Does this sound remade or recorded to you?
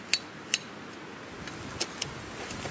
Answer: recorded